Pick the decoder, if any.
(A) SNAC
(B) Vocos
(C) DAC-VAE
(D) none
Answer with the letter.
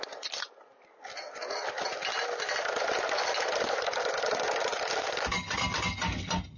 D